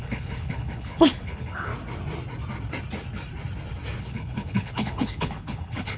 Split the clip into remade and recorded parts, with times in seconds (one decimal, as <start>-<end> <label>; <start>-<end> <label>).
0.0-1.7 remade; 1.7-4.0 recorded; 4.0-6.0 remade